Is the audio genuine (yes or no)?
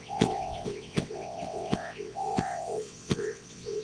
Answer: no